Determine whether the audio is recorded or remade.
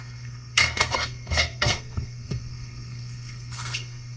remade